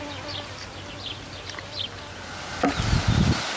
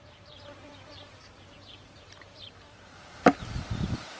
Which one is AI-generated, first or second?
second